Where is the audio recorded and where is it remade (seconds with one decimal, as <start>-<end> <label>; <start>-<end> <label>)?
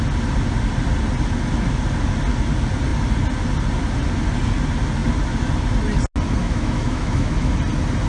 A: 0.0-6.4 recorded; 6.4-7.6 remade; 7.6-8.1 recorded